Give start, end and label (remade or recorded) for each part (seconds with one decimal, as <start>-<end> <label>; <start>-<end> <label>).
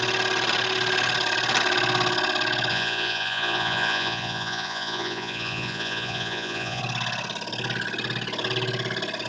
0.0-2.7 recorded; 2.7-6.8 remade; 6.8-9.3 recorded